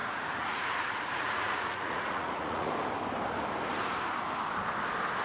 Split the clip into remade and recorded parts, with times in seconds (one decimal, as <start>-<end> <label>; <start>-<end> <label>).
0.0-2.7 remade; 2.7-5.2 recorded